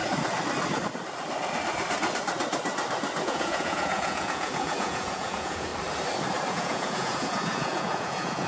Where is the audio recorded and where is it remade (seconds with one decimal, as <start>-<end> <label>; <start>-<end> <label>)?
0.0-3.2 recorded; 3.2-5.7 remade; 5.7-6.5 recorded; 6.5-8.5 remade